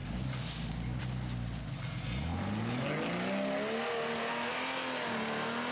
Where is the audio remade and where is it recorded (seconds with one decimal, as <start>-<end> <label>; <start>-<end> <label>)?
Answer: 0.0-5.7 recorded